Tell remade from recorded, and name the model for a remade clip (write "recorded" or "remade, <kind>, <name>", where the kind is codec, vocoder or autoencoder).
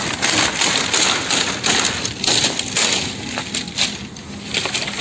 recorded